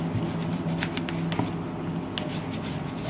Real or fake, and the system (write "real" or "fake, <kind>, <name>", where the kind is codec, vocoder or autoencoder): real